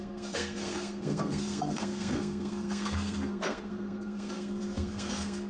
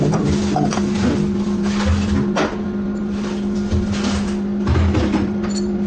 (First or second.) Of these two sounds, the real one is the second